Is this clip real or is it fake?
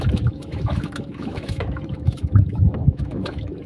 fake